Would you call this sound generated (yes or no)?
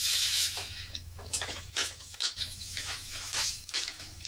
yes